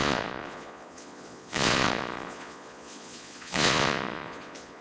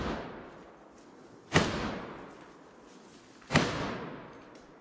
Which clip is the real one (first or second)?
second